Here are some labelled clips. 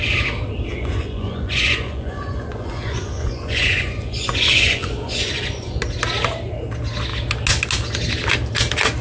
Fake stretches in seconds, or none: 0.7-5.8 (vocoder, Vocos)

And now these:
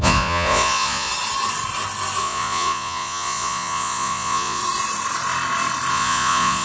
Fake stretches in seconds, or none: 0.0-1.1 (vocoder, Vocos); 2.2-4.6; 5.9-6.6

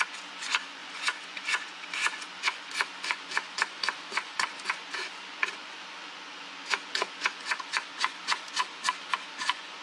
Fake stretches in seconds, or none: 0.0-9.8 (vocoder, Vocos)

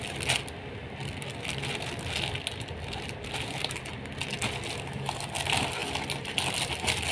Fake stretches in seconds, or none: none